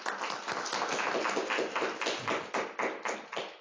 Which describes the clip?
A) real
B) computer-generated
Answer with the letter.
A